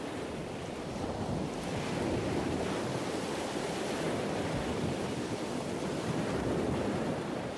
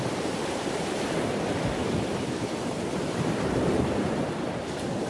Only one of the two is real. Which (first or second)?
first